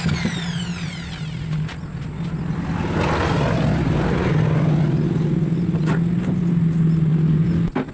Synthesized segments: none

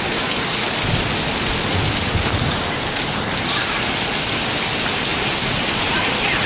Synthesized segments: 5.1-6.0 (vocoder, BigVGAN v2)

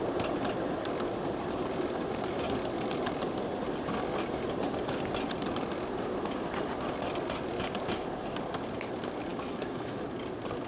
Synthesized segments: 9.3-10.0 (autoencoder, DAC-VAE)

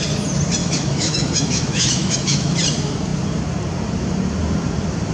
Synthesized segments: 0.6-2.6 (autoencoder, DAC-VAE)

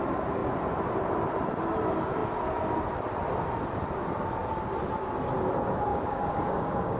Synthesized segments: 5.9-7.0 (codec, DAC)

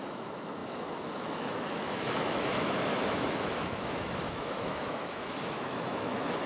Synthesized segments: 0.0-6.5 (autoencoder, DAC-VAE)

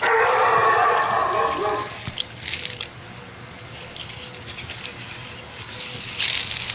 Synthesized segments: none

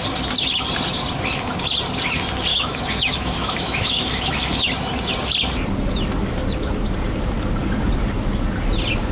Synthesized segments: 2.5-4.3 (autoencoder, DAC-VAE)